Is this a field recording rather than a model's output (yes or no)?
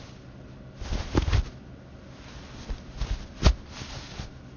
yes